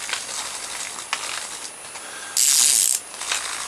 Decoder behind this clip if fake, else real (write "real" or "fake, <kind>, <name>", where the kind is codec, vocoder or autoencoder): real